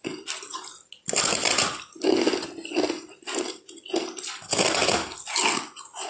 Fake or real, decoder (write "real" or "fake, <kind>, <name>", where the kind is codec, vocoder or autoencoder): real